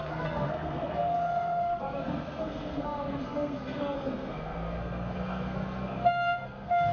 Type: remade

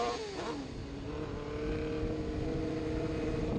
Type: recorded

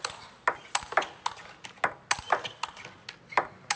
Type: recorded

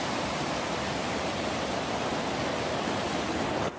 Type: recorded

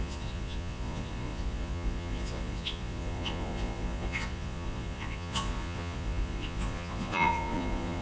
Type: remade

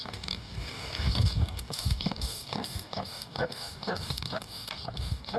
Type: remade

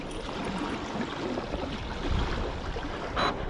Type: recorded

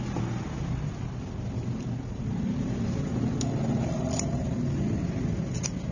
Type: recorded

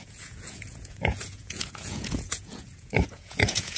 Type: remade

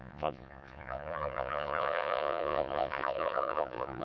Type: remade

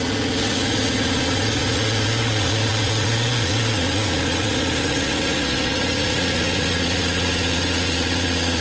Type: remade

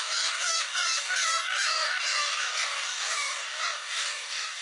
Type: remade